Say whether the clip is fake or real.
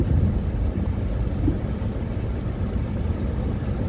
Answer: real